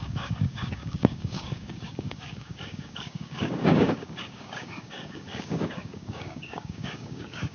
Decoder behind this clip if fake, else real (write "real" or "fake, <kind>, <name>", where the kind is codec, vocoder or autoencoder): fake, codec, DAC